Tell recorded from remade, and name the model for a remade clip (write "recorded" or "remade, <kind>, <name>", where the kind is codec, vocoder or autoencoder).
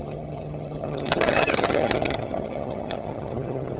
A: remade, vocoder, HiFi-GAN